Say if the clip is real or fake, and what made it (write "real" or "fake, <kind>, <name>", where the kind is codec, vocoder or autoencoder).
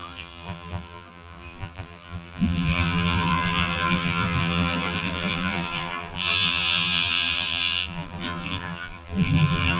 fake, vocoder, BigVGAN v2